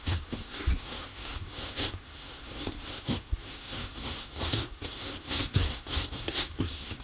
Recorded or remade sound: remade